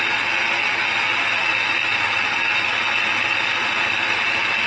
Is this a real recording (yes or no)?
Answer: yes